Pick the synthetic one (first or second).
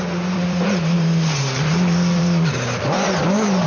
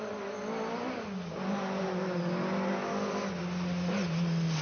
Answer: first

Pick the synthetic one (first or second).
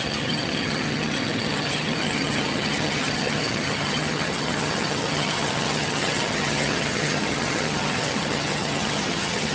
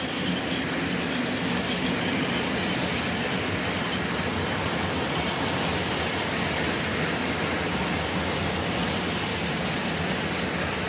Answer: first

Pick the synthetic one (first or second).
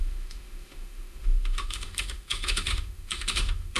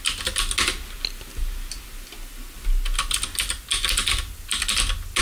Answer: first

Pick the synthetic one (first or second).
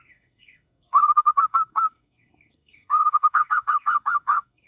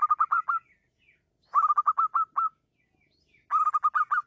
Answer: first